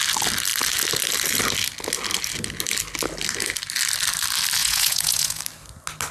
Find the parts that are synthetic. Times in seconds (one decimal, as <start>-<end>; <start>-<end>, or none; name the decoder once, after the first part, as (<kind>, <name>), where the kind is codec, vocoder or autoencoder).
4.6-5.4 (vocoder, Vocos)